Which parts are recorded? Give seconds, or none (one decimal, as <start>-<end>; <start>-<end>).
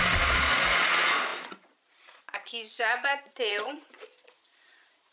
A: none